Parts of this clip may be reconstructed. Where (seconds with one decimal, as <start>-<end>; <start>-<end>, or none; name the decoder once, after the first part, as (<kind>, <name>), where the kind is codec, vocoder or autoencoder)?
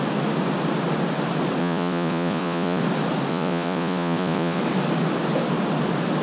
1.6-2.8 (vocoder, Vocos); 3.3-4.6